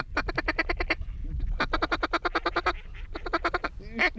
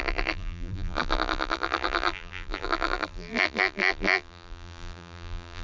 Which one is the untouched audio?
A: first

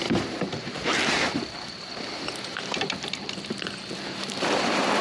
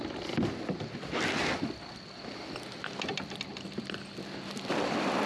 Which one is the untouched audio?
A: second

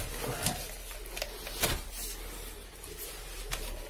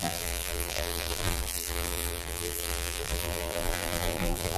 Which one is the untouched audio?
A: first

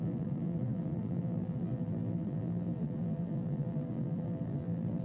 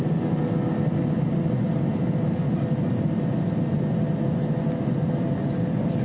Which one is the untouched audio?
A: second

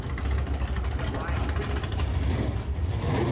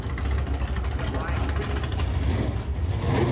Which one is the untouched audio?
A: second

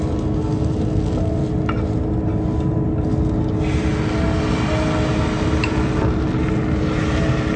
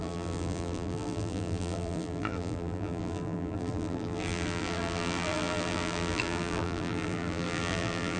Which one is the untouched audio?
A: first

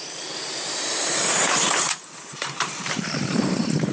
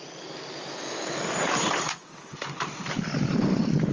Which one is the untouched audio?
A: second